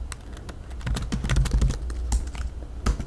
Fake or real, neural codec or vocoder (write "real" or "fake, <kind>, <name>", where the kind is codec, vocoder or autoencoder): real